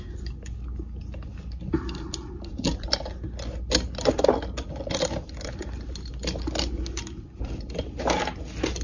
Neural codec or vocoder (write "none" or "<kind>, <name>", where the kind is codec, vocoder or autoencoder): none